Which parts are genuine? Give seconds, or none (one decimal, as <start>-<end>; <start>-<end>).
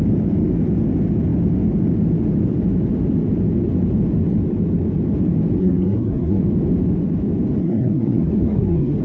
0.0-5.6; 6.4-7.6